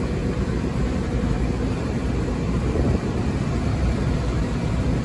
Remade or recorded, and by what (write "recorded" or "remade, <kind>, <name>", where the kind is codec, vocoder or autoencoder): remade, vocoder, BigVGAN v2